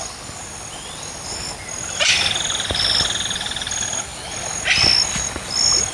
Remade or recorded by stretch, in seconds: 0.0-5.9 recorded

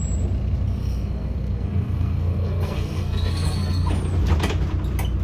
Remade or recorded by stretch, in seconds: 0.0-0.8 recorded; 0.8-3.9 remade; 3.9-5.2 recorded

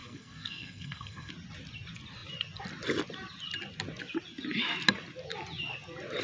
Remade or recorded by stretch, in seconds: 0.0-1.3 remade; 1.3-6.2 recorded

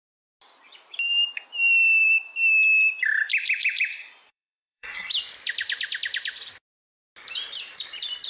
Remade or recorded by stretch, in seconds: 0.0-4.3 recorded; 4.3-5.1 remade; 5.1-8.3 recorded

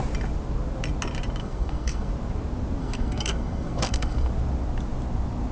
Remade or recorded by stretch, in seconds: 0.0-1.4 recorded; 1.4-2.1 remade; 2.1-2.8 recorded; 2.8-4.3 remade; 4.3-5.5 recorded